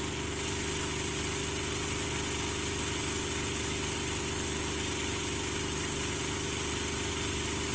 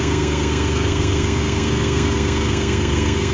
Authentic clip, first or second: first